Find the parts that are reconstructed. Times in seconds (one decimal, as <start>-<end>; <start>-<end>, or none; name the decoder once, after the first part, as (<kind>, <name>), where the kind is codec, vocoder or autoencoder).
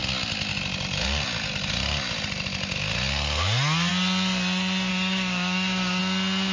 4.9-6.0 (codec, DAC)